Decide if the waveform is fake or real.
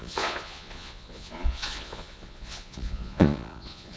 fake